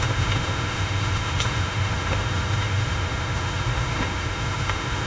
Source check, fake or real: fake